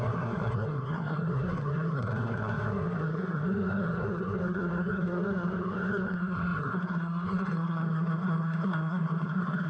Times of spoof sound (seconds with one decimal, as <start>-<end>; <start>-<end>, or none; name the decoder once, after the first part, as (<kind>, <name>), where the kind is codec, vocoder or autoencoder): 0.0-9.7 (codec, SNAC)